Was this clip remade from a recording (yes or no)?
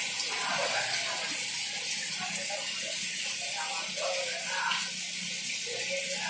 no